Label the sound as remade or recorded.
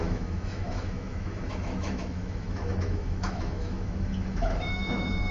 remade